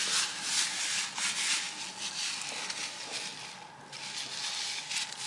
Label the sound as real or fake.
real